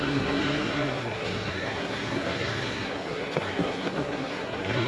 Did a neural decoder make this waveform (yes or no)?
yes